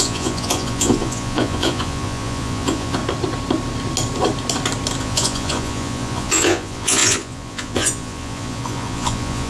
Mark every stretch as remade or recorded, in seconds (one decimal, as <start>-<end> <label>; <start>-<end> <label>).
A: 0.0-3.0 remade; 3.0-5.0 recorded; 5.0-9.5 remade